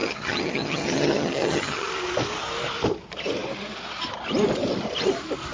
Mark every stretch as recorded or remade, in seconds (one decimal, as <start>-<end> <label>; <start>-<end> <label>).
0.0-1.9 remade; 1.9-5.5 recorded